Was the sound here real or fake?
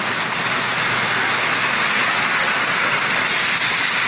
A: real